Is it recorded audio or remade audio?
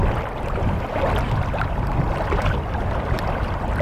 recorded